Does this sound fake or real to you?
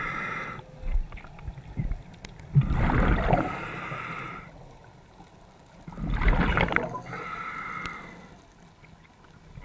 real